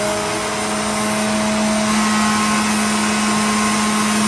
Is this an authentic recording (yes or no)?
yes